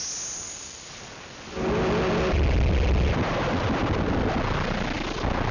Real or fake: real